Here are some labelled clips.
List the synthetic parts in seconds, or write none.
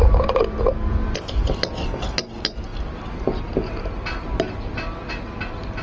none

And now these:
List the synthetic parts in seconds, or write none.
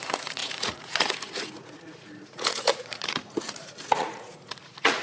0.0-5.0 (vocoder, Vocos)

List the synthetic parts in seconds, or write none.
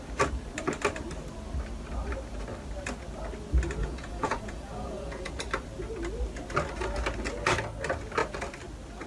3.8-5.3 (vocoder, Vocos)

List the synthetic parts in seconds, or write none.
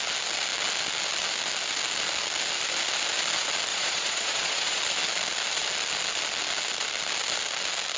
3.7-4.8 (vocoder, Vocos)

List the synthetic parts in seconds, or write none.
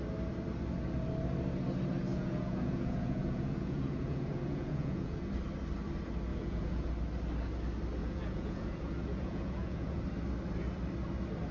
2.1-5.3 (vocoder, Vocos); 6.3-6.9; 8.0-10.0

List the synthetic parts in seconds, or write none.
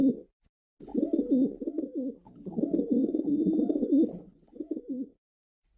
0.0-0.9 (vocoder, Vocos); 2.9-5.8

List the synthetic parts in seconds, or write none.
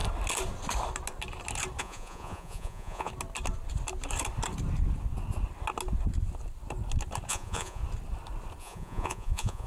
1.8-3.1 (vocoder, Vocos); 7.3-7.8; 8.6-9.7